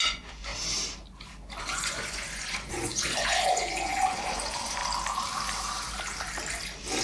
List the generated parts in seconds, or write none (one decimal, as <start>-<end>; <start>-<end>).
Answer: 0.0-0.5; 1.6-4.8